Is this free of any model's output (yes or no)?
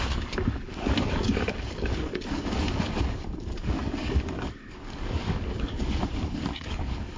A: no